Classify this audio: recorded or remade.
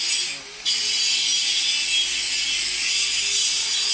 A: recorded